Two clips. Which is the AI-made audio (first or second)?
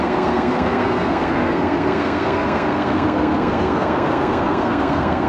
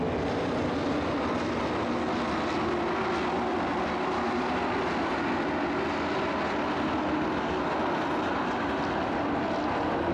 first